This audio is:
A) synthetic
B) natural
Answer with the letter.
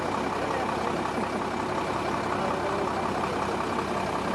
B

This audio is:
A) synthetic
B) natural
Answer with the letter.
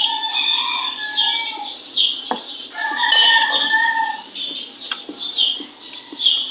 B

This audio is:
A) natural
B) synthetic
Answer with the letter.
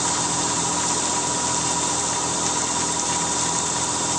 A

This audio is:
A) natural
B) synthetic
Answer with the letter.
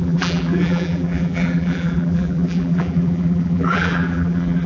B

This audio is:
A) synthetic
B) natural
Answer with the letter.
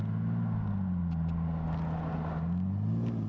B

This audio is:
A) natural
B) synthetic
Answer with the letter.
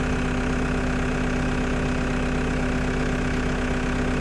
A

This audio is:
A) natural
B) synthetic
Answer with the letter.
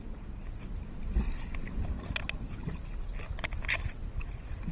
A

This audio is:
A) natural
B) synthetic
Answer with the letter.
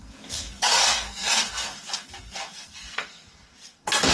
B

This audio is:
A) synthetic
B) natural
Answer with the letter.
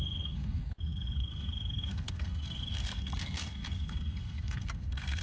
A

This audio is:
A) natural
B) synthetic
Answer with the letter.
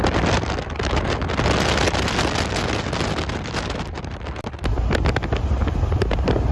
A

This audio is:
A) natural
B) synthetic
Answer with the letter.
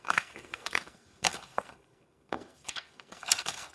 B